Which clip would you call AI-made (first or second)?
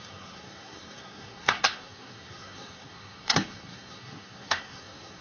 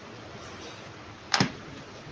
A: first